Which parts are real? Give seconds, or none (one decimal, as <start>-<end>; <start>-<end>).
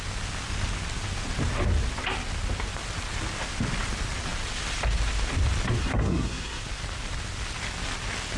0.0-5.8; 6.6-8.4